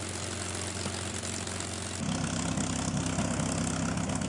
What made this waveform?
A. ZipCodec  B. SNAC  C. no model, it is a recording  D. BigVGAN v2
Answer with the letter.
C